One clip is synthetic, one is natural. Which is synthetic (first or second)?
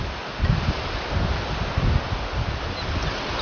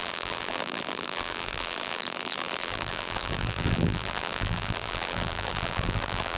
second